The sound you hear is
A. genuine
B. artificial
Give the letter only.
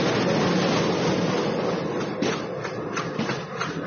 A